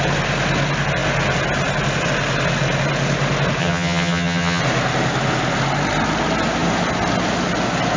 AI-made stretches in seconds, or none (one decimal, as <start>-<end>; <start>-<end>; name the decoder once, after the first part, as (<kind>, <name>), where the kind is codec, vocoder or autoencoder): 3.6-4.6 (vocoder, HiFi-GAN)